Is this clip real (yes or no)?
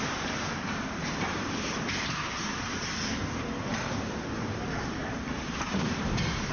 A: no